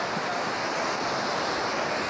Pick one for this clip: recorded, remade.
recorded